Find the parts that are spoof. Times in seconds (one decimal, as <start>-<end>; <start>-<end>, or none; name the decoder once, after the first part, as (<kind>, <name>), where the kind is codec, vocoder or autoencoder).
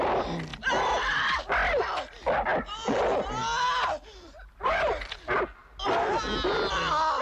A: 0.5-1.8 (vocoder, BigVGAN v2); 2.5-3.0; 3.4-5.1